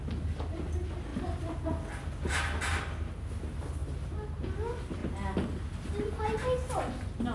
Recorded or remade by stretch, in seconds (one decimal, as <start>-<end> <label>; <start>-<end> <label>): 0.0-7.3 recorded